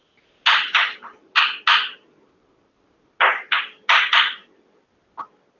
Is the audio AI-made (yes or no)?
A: no